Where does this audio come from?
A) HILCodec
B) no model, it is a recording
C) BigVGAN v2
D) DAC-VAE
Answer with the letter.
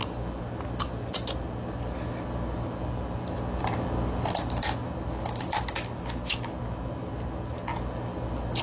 B